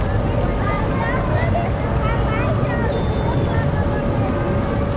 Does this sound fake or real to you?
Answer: real